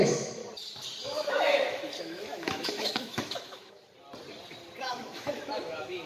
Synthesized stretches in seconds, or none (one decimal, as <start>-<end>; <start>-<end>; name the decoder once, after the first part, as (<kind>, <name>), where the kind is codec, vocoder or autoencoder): 0.0-0.4 (autoencoder, DAC-VAE); 1.0-3.8; 4.8-6.1